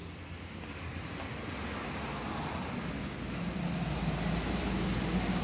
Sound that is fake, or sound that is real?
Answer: real